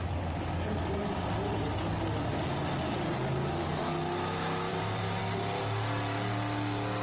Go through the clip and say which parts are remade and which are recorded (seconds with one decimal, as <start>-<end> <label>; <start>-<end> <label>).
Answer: 0.0-4.7 recorded; 4.7-5.2 remade; 5.2-7.0 recorded